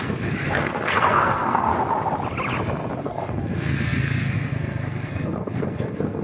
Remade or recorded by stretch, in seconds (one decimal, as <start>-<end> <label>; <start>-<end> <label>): 0.0-1.7 remade; 1.7-3.0 recorded; 3.0-6.2 remade